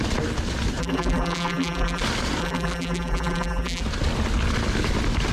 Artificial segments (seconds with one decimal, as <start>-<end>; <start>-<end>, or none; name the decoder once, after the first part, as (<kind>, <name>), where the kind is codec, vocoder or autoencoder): 0.8-2.0 (vocoder, BigVGAN v2); 2.4-3.8